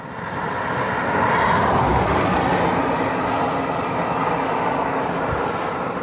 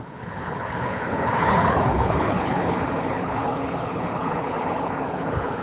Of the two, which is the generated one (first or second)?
second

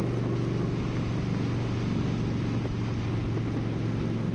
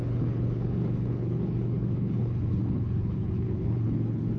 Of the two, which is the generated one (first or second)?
second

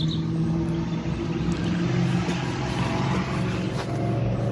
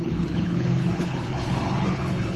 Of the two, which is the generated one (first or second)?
second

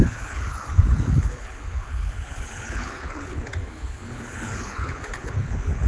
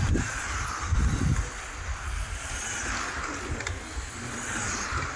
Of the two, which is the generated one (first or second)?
first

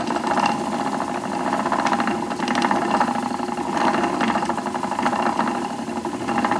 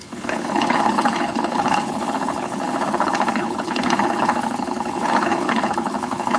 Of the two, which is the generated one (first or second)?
second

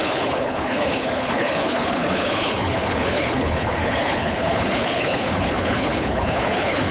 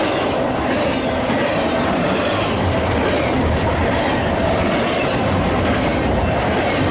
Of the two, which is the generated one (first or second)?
first